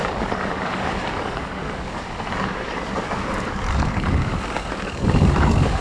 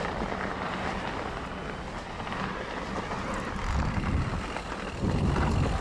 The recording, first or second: second